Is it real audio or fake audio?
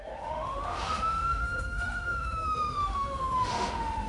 fake